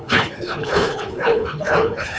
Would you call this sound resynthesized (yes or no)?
yes